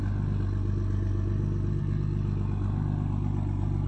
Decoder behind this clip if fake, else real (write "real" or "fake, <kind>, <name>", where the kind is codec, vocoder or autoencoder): real